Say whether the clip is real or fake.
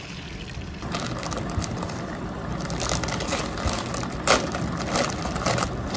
real